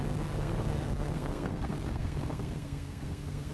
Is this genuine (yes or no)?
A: no